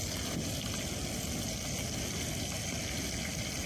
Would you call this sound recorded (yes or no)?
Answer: yes